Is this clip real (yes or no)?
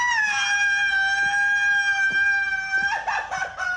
yes